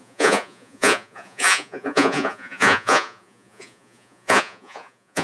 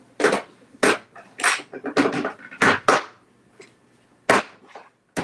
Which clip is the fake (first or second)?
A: first